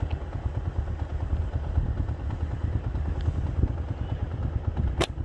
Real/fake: real